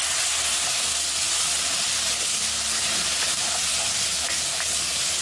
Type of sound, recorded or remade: recorded